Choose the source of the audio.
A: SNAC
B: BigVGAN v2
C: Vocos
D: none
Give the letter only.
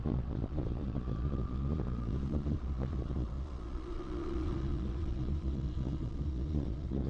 C